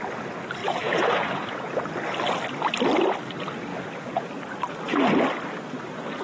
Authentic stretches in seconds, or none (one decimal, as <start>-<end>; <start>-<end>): 0.0-0.6; 1.8-3.7; 4.3-6.2